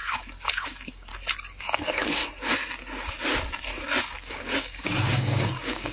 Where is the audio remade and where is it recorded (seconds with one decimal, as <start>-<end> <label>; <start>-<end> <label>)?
0.0-0.5 recorded; 0.5-1.1 remade; 1.1-1.6 recorded; 1.6-2.2 remade; 2.2-4.0 recorded; 4.0-5.9 remade